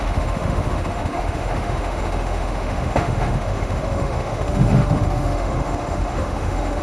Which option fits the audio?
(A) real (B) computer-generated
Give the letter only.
B